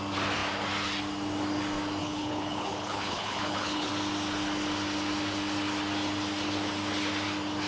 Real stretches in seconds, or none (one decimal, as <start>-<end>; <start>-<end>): 0.0-2.0; 3.9-7.7